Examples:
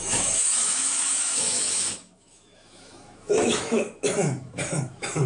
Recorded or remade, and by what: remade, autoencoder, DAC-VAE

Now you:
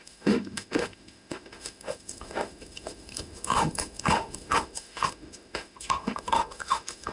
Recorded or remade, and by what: remade, autoencoder, DAC-VAE